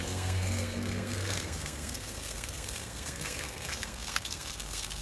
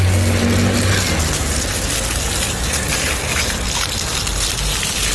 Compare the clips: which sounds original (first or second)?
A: second